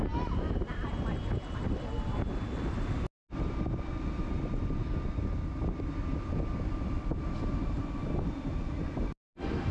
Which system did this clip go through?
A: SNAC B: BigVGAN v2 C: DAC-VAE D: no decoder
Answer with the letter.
D